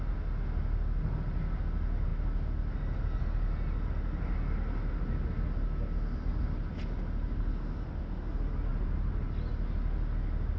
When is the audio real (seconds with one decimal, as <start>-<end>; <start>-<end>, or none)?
0.0-8.7; 9.3-10.6